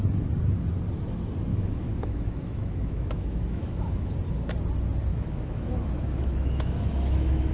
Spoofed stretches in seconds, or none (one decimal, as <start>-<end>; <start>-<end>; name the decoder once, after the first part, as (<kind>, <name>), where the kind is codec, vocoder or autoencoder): 1.5-4.1 (autoencoder, DAC-VAE); 5.1-7.5